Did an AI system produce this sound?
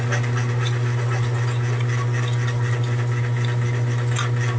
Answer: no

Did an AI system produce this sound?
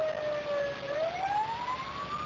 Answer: no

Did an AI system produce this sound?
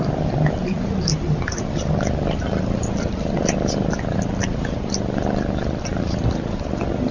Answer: no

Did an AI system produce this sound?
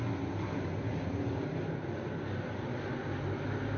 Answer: no